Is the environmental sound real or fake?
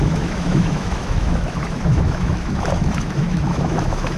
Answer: fake